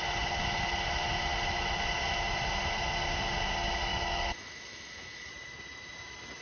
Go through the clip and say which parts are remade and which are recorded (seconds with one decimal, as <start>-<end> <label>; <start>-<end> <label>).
0.0-3.9 recorded; 3.9-5.3 remade; 5.3-6.4 recorded